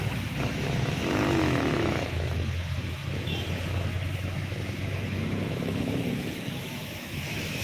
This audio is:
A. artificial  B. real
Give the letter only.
A